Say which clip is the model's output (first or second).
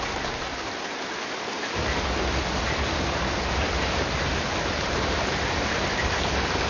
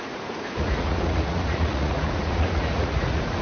second